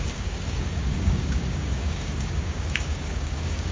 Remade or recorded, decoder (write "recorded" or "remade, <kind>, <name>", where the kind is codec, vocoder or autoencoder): remade, codec, DAC